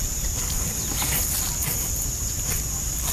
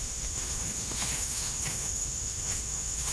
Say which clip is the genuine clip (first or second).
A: first